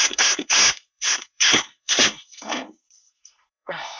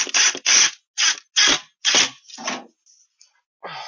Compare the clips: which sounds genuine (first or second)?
second